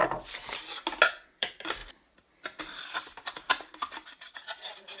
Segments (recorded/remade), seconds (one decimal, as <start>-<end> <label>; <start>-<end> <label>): 0.0-1.2 recorded; 1.2-1.8 remade; 1.8-2.6 recorded; 2.6-3.5 remade; 3.5-4.5 recorded; 4.5-5.0 remade